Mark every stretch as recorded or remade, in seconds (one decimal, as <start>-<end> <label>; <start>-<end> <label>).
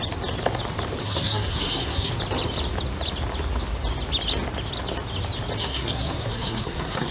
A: 0.0-1.0 recorded; 1.0-2.1 remade; 2.1-5.6 recorded; 5.6-7.1 remade